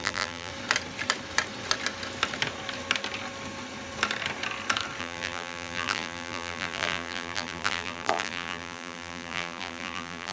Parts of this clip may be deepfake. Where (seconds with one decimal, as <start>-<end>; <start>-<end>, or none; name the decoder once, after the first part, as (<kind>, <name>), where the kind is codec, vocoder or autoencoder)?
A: 0.0-0.5 (vocoder, BigVGAN v2); 5.0-10.3